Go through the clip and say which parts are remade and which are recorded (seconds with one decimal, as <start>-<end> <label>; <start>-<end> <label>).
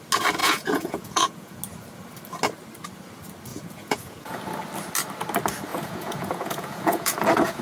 0.0-0.4 recorded; 0.4-1.6 remade; 1.6-3.5 recorded; 3.5-4.4 remade; 4.4-5.7 recorded; 5.7-7.6 remade